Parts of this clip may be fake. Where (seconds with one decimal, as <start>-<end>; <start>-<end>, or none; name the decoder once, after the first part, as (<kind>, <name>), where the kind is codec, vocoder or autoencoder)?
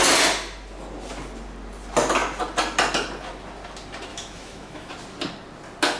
4.1-4.9 (autoencoder, DAC-VAE)